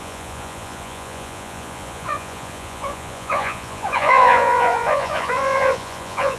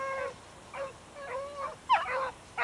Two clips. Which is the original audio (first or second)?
second